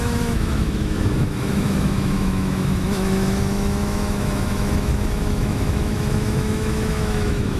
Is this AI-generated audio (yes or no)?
yes